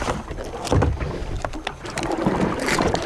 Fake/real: real